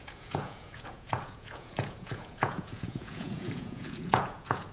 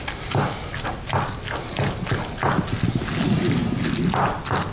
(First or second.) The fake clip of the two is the first